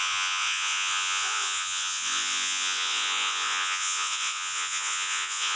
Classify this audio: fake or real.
fake